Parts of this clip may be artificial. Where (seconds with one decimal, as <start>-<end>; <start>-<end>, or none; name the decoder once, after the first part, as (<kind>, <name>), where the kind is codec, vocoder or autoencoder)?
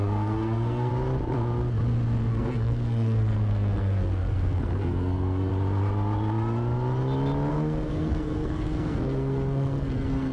0.0-0.9 (codec, SNAC); 2.3-5.5; 7.5-10.3